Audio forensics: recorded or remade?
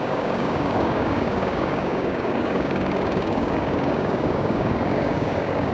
remade